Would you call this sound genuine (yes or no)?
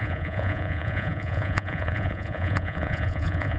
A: no